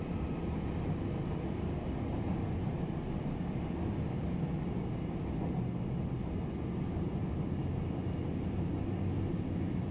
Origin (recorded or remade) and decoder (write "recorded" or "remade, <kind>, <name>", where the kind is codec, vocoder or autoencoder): recorded